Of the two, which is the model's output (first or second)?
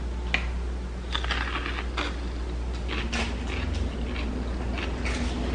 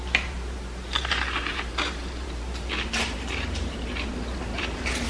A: second